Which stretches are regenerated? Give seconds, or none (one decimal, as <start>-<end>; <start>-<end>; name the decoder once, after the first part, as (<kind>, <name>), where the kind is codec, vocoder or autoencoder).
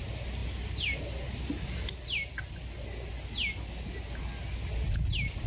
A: none